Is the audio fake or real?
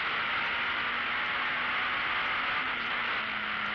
real